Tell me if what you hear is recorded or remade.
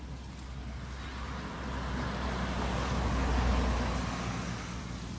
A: recorded